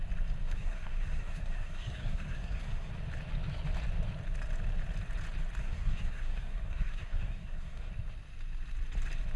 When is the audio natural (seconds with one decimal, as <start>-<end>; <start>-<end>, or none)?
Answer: 0.0-0.4; 2.9-5.6; 7.9-9.4